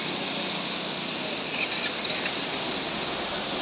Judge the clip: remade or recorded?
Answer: recorded